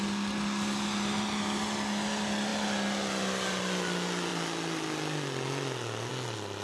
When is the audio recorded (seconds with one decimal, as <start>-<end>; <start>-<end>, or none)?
0.0-6.6